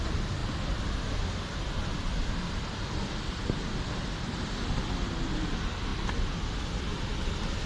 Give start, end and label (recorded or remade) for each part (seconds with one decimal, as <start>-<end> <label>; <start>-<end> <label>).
0.0-7.7 recorded

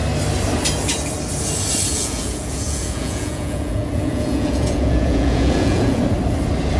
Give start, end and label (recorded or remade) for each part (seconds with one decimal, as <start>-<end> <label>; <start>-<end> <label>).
0.0-1.9 recorded; 1.9-6.0 remade; 6.0-6.8 recorded

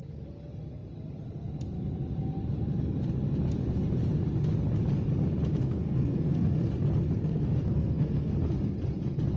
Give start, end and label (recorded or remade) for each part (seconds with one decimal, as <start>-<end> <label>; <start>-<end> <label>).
0.0-5.6 recorded; 5.6-6.7 remade; 6.7-7.2 recorded; 7.2-8.3 remade; 8.3-9.4 recorded

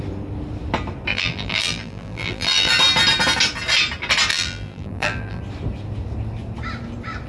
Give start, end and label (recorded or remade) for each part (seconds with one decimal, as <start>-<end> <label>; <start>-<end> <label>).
0.0-1.1 recorded; 1.1-2.7 remade; 2.7-4.3 recorded; 4.3-5.4 remade; 5.4-7.3 recorded

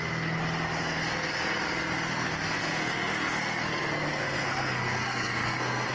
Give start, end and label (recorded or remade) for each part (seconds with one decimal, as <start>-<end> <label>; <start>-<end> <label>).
0.0-2.1 recorded; 2.1-5.9 remade